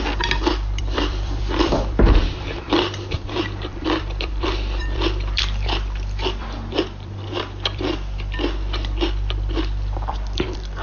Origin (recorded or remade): remade